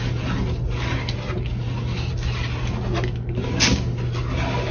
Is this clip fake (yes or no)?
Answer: no